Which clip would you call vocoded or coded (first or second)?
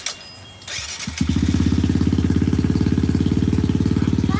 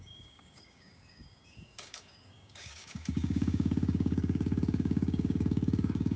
second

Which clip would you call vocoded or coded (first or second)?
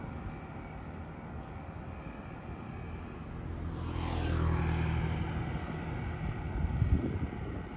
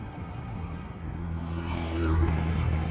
second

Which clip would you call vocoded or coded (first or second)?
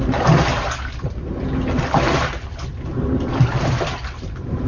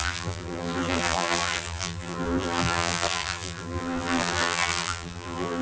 second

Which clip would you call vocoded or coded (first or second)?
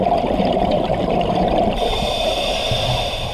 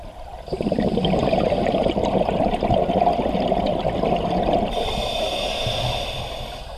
first